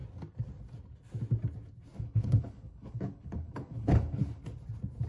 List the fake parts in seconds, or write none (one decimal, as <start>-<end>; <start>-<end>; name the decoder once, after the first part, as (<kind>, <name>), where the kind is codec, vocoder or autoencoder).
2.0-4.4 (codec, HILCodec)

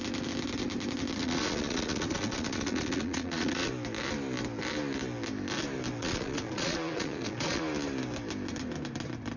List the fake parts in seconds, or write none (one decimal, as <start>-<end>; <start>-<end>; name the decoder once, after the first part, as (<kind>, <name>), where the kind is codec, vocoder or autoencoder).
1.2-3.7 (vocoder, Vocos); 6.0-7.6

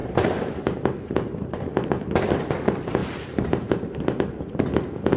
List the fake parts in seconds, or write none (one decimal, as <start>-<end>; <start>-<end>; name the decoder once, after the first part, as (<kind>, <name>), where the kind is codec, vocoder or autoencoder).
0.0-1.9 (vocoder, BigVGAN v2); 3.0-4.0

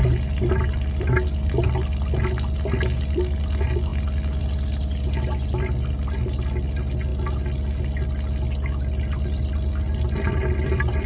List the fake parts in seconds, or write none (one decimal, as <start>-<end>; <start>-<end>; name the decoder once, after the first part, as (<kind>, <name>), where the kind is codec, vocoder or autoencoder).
none

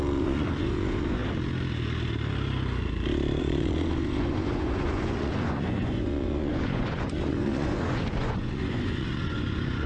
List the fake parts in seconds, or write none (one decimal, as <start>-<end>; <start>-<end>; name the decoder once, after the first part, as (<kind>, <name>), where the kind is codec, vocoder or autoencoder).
0.0-1.2 (vocoder, Vocos); 3.4-9.9

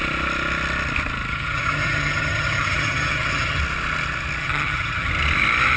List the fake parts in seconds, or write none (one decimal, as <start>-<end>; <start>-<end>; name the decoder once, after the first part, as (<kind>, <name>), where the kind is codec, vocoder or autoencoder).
1.3-3.6 (vocoder, HiFi-GAN); 4.4-5.1

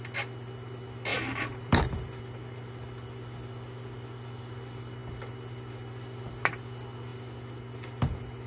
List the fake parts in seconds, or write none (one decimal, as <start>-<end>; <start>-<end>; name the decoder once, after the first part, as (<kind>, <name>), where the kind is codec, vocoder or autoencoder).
1.1-2.2 (vocoder, BigVGAN v2)